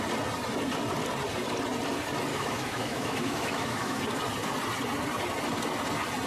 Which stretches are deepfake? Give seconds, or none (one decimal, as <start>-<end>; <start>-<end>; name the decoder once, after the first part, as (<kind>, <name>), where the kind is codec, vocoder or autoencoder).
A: 2.3-4.0 (autoencoder, DAC-VAE)